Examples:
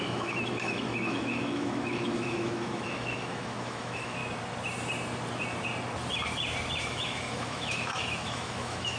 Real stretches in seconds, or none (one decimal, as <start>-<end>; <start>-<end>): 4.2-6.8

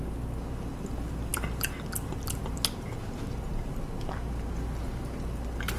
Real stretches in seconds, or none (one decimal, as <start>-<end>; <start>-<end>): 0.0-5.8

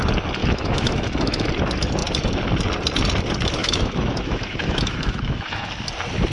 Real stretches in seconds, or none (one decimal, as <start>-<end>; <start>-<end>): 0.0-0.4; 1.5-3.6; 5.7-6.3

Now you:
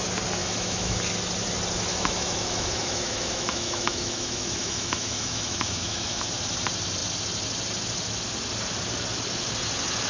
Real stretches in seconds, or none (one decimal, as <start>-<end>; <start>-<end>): 0.0-0.4; 1.0-1.9; 6.2-10.1

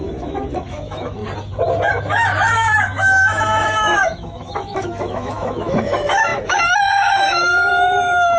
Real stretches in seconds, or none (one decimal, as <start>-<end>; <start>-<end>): 1.2-1.9

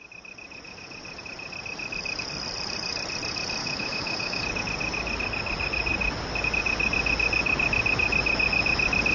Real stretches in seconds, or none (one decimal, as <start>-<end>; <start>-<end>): 0.0-3.6; 4.4-9.1